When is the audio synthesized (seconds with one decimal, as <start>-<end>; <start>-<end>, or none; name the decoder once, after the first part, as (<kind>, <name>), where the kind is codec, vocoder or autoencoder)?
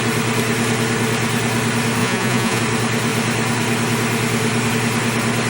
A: 2.0-2.6 (vocoder, Vocos)